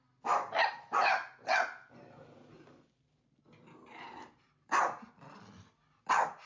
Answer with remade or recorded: recorded